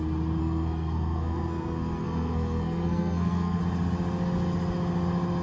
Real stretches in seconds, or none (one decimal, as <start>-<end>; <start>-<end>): 0.0-0.4; 3.6-5.4